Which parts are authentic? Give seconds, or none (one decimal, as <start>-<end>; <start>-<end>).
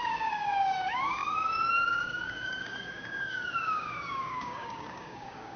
none